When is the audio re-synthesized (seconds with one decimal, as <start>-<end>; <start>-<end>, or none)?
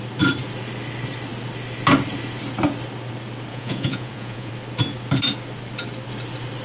3.5-4.5